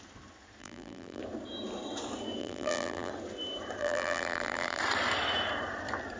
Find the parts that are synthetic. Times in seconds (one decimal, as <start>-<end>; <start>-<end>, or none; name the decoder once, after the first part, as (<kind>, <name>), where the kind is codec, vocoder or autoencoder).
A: 0.6-1.2 (vocoder, BigVGAN v2); 2.4-3.1; 3.8-4.8